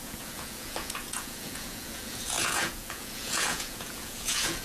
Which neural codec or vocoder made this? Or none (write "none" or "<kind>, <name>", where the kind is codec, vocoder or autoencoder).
vocoder, Vocos